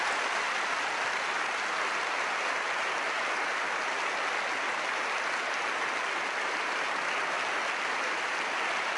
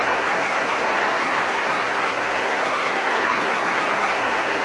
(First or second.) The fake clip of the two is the second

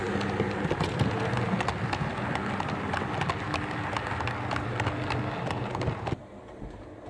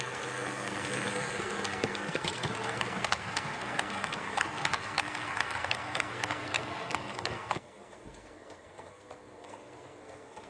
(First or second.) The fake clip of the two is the second